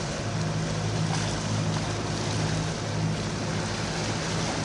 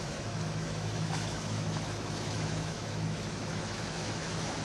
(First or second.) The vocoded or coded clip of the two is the second